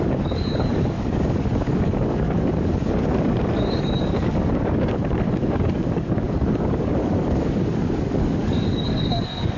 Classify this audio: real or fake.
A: fake